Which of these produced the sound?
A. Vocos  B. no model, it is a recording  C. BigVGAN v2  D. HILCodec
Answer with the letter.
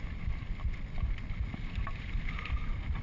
B